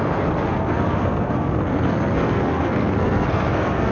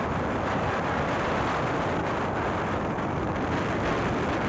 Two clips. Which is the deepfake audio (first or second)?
first